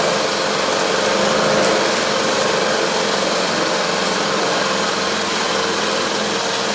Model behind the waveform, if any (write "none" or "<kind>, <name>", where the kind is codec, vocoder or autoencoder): none